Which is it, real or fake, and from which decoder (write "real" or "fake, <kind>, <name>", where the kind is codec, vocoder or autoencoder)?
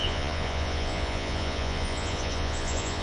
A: fake, vocoder, Vocos